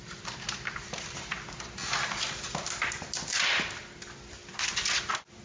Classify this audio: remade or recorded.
recorded